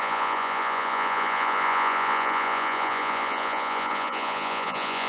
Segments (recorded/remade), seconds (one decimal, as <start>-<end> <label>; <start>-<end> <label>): 0.0-5.1 remade